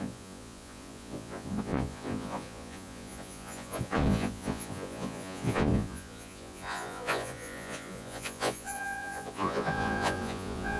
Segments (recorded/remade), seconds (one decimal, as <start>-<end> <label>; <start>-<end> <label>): 0.0-10.8 remade